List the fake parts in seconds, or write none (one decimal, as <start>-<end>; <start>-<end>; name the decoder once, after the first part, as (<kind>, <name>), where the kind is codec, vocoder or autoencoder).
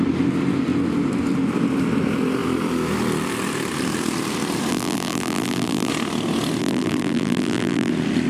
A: 4.7-5.9 (vocoder, BigVGAN v2); 6.6-7.9